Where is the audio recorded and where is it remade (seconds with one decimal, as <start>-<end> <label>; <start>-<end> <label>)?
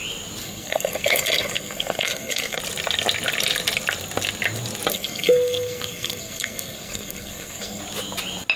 0.0-0.4 recorded; 0.4-2.6 remade; 2.6-4.9 recorded; 4.9-7.8 remade; 7.8-8.6 recorded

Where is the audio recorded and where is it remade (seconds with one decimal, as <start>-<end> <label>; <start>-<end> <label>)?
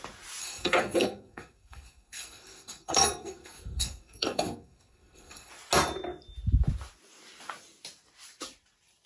0.0-0.4 recorded; 0.4-5.5 remade; 5.5-9.1 recorded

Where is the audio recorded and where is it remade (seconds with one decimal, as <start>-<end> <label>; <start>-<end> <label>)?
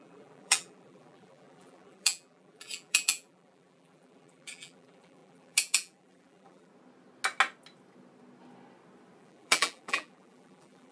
0.0-6.7 remade; 6.7-9.2 recorded; 9.2-10.9 remade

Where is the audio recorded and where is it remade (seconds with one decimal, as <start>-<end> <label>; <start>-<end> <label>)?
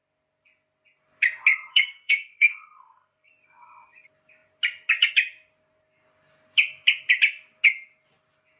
0.0-1.7 recorded; 1.7-3.3 remade; 3.3-8.6 recorded